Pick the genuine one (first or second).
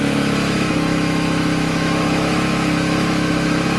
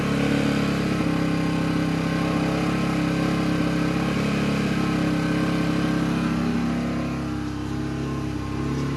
second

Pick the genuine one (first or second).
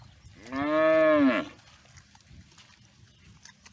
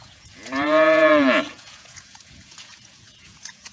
first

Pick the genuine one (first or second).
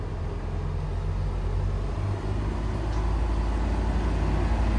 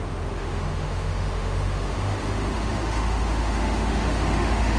first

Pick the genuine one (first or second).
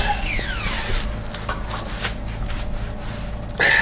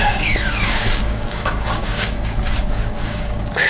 first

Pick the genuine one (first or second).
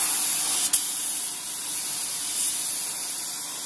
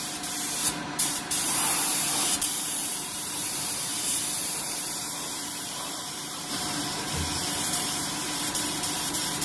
first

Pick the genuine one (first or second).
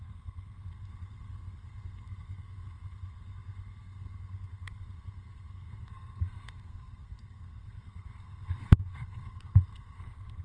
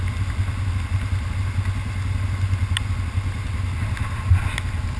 second